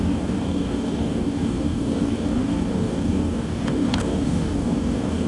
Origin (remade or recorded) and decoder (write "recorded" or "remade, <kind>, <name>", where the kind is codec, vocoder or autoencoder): remade, codec, DAC